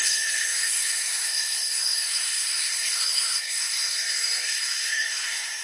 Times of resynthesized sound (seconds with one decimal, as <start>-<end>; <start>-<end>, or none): 0.0-5.6